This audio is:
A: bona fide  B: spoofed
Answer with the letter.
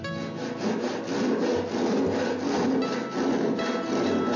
A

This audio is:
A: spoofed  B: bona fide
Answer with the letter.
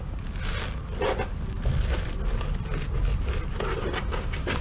B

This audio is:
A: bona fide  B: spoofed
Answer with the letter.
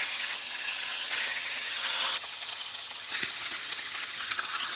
B